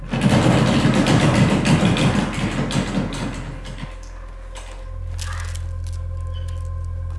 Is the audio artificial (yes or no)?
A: no